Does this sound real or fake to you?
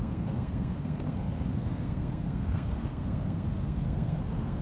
fake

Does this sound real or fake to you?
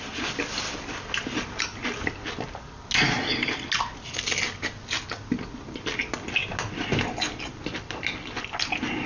real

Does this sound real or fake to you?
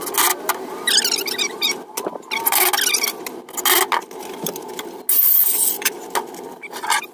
real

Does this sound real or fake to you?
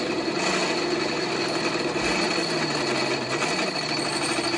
real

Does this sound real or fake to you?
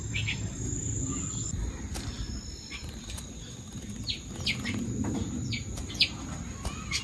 real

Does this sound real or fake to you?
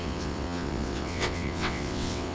fake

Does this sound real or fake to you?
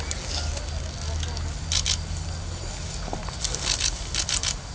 real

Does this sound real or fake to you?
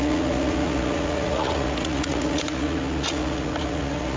fake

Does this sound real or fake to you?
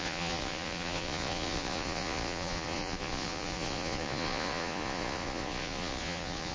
fake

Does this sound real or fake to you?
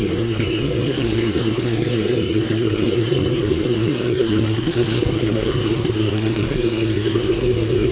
fake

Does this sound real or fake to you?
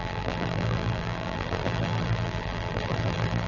fake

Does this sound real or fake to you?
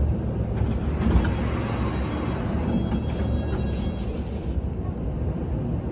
real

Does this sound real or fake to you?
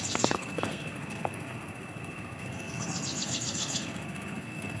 fake